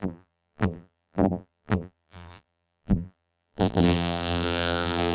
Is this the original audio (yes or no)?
no